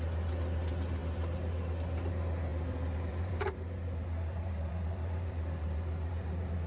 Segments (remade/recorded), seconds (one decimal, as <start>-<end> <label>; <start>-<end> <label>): 0.0-2.5 recorded; 2.5-6.7 remade